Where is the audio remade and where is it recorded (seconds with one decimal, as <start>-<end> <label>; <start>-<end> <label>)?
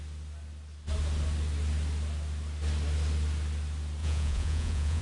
0.0-4.0 recorded; 4.0-5.0 remade